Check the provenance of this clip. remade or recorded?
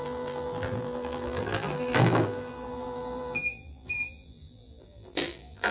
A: remade